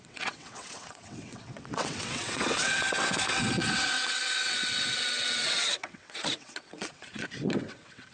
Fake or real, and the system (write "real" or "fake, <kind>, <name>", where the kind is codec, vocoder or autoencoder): fake, vocoder, WaveNeXt